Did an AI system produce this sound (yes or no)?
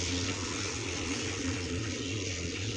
yes